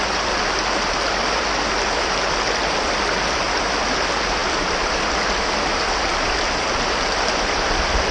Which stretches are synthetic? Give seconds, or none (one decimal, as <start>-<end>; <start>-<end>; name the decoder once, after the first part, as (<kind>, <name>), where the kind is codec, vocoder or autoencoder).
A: none